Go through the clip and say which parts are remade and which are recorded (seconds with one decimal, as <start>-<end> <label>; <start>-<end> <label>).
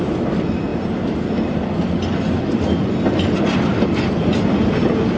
0.0-5.2 recorded